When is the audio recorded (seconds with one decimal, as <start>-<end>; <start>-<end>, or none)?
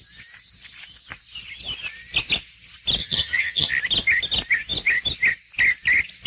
0.0-3.0; 3.7-6.3